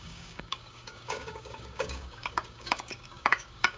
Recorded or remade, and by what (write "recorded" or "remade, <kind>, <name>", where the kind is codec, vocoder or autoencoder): remade, codec, DAC